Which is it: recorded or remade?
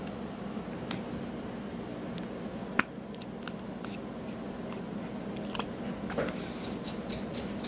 recorded